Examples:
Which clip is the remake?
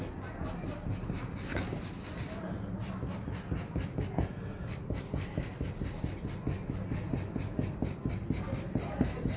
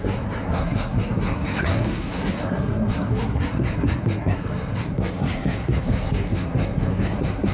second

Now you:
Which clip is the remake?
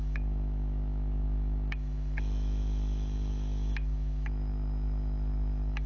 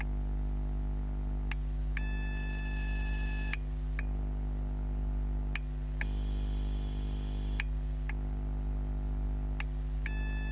first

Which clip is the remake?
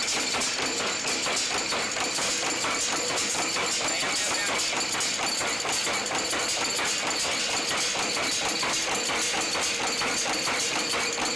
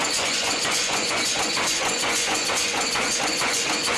second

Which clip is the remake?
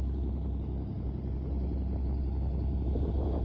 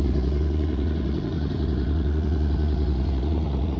second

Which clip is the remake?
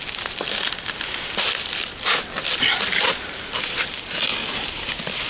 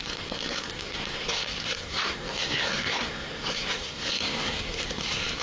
second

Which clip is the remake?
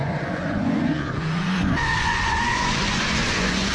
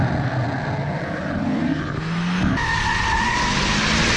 first